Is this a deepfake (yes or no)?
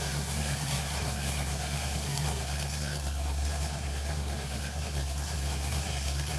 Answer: yes